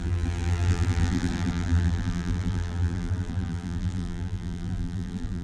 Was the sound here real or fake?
fake